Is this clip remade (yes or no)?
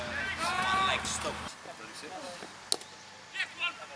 no